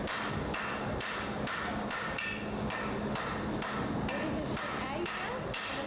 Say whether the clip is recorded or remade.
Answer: recorded